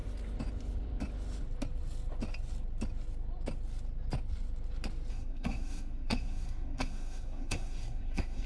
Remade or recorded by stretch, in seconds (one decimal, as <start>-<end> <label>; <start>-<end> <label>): 0.0-5.1 recorded; 5.1-8.5 remade